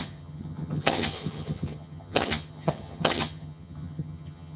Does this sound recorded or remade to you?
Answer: remade